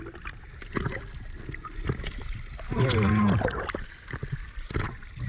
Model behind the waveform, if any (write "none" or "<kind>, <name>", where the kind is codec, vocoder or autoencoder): none